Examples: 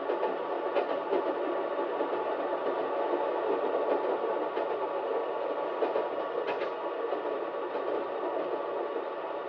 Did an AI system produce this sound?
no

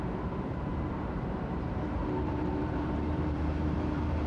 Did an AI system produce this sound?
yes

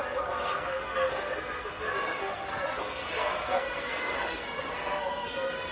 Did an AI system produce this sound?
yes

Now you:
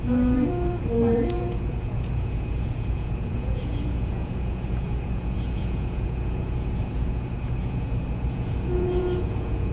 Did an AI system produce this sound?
yes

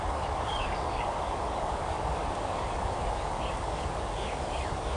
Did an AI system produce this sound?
yes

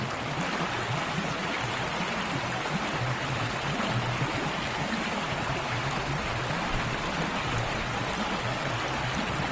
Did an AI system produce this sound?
no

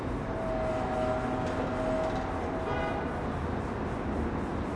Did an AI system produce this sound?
no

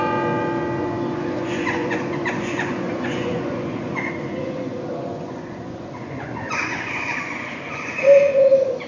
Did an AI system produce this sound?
yes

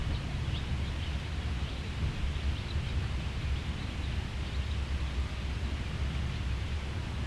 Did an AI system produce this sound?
no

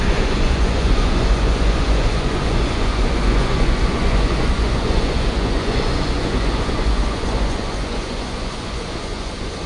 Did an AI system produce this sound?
yes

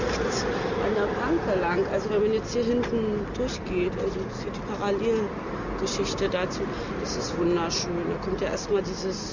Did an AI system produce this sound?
no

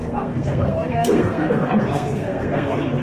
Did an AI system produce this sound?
yes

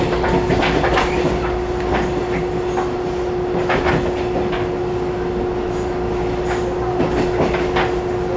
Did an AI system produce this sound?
no